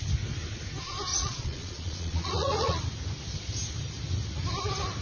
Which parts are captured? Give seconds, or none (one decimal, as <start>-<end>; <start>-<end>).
0.0-1.1; 2.8-5.0